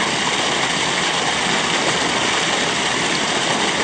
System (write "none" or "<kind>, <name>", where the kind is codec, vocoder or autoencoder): none